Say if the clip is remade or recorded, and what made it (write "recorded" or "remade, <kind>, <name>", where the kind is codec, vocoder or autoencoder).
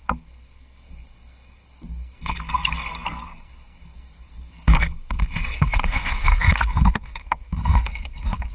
remade, codec, SNAC